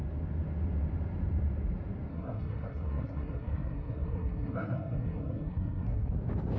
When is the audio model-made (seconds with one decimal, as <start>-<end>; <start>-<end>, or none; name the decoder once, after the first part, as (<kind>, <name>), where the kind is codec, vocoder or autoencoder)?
2.1-6.1 (codec, SNAC)